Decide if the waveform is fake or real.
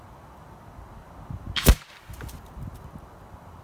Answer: real